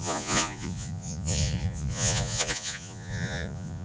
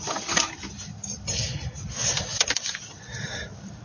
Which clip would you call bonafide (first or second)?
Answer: second